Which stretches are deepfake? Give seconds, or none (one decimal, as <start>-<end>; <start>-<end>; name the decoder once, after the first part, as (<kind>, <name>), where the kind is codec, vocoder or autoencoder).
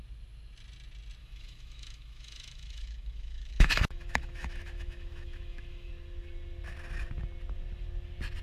1.2-5.9 (autoencoder, DAC-VAE)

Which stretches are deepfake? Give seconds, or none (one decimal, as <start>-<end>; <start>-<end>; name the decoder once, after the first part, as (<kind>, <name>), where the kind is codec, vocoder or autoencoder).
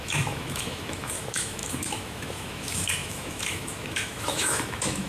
0.0-5.1 (autoencoder, DAC-VAE)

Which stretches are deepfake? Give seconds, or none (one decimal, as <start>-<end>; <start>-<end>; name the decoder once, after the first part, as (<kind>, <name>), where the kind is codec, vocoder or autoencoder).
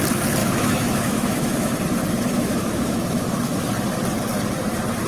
0.4-1.7 (autoencoder, DAC-VAE); 2.3-3.7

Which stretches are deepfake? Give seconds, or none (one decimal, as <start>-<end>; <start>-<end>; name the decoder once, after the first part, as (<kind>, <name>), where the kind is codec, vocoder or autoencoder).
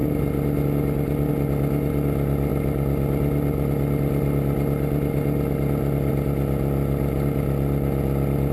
none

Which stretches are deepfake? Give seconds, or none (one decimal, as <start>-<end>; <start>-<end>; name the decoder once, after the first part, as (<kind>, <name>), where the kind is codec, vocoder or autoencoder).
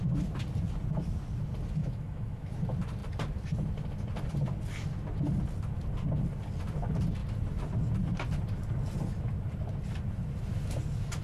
1.8-2.5 (autoencoder, DAC-VAE)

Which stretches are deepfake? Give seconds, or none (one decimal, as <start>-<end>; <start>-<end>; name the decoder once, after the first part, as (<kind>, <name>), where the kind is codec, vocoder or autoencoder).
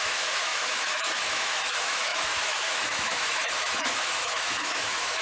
0.0-5.2 (autoencoder, DAC-VAE)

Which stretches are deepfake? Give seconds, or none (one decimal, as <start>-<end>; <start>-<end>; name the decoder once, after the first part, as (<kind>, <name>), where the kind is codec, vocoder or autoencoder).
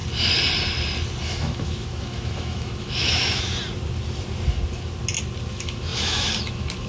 1.2-3.5 (autoencoder, DAC-VAE); 5.5-6.9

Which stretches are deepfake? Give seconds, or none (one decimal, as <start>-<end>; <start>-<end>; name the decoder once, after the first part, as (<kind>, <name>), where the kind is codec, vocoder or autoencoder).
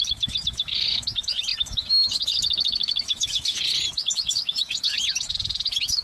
0.0-6.0 (autoencoder, DAC-VAE)